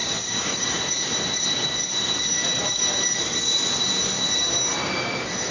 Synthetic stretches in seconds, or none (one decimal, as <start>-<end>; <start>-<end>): 0.0-0.8